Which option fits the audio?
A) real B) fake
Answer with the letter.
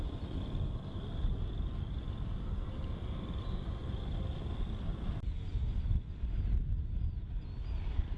A